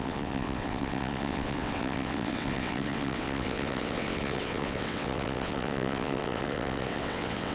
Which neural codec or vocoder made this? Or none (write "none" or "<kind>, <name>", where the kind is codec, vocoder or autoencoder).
vocoder, WaveNeXt